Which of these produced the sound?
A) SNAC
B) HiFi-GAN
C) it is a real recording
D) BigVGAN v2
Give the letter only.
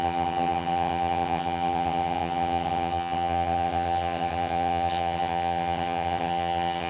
B